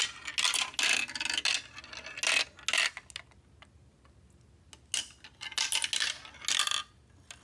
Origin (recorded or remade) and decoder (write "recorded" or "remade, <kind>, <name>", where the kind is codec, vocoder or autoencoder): recorded